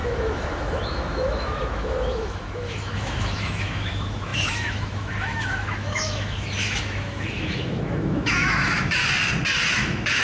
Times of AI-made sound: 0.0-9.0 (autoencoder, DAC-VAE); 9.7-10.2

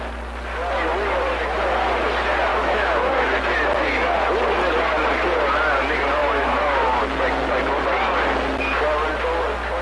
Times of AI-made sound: 2.5-3.1 (autoencoder, DAC-VAE); 6.2-7.0

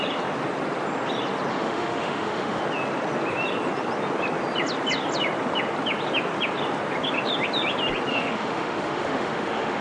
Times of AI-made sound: 1.5-2.6 (autoencoder, DAC-VAE); 8.1-9.8

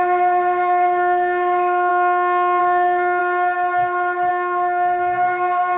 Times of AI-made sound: 0.0-3.2 (autoencoder, DAC-VAE); 4.3-5.8